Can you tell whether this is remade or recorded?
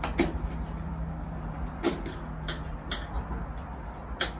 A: recorded